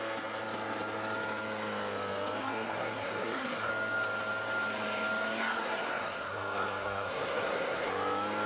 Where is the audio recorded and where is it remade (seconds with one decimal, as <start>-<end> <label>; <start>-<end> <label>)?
0.0-2.4 recorded; 2.4-3.7 remade; 3.7-5.5 recorded; 5.5-7.9 remade; 7.9-8.5 recorded